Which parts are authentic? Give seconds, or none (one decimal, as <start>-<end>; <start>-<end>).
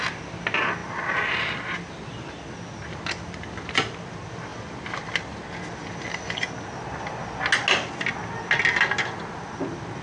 0.0-10.0